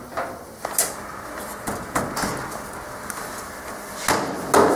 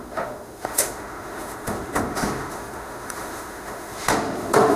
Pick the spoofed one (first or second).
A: second